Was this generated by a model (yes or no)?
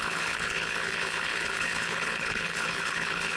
yes